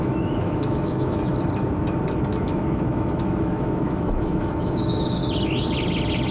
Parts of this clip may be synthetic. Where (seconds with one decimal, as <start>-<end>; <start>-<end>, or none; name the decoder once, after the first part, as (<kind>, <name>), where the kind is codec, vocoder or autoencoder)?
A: 0.0-1.3 (autoencoder, DAC-VAE); 2.4-5.2